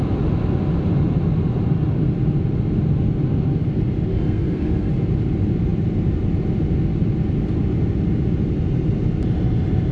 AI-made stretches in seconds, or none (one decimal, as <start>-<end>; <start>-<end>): 4.1-4.9